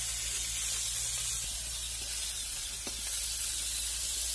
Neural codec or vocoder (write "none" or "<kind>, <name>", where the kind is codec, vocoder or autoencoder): none